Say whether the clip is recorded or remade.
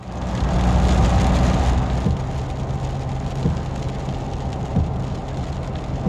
recorded